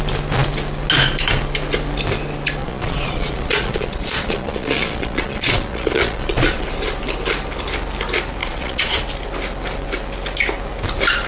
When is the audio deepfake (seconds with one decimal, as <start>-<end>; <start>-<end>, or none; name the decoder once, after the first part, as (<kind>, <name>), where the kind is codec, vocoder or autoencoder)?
2.6-6.7 (vocoder, Vocos); 8.4-9.0

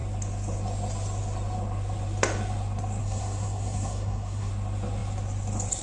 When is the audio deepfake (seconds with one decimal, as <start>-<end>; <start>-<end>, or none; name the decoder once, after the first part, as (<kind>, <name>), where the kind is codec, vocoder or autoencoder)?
3.0-4.5 (codec, SNAC)

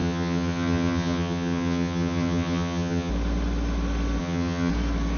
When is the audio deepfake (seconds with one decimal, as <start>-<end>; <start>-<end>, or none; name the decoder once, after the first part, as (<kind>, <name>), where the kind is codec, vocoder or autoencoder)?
0.0-3.1 (vocoder, HiFi-GAN); 4.2-4.7

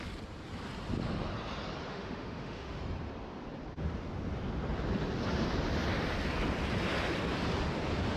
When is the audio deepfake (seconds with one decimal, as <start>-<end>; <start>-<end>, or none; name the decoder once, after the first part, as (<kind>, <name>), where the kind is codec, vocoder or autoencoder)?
1.9-2.8 (autoencoder, DAC-VAE)

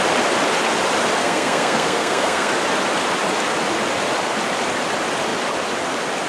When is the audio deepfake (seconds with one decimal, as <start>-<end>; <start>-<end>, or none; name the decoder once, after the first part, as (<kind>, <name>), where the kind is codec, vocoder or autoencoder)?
1.2-2.5 (codec, SNAC)

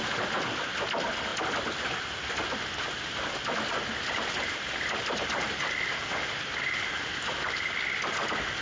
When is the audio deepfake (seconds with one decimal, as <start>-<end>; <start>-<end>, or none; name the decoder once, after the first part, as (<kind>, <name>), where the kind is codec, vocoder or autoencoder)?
none